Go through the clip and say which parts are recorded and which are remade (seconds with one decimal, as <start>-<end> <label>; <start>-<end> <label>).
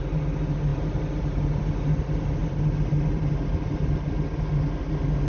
0.0-5.3 recorded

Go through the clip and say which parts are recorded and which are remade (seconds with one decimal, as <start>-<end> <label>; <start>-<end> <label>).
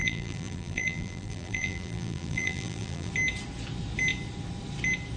0.0-3.1 remade; 3.1-5.2 recorded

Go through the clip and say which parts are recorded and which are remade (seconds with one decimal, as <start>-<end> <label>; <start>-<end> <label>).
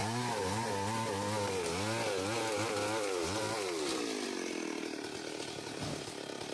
0.0-0.7 remade; 0.7-6.5 recorded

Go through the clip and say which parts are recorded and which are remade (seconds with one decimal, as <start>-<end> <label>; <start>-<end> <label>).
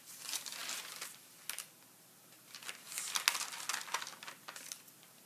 0.0-5.3 recorded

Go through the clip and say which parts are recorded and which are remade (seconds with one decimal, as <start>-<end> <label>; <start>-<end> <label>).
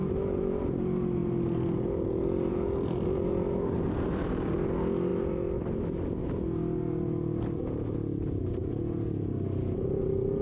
0.0-10.4 recorded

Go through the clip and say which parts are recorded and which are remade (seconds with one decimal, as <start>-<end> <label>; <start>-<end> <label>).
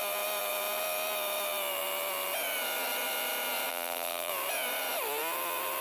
0.0-3.7 recorded; 3.7-4.3 remade; 4.3-5.8 recorded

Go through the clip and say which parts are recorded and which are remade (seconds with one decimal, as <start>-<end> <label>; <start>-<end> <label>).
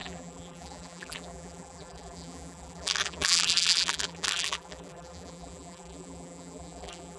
0.0-7.2 remade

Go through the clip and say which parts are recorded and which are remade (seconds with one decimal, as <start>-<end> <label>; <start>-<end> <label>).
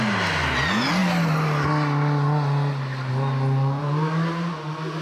0.0-5.0 recorded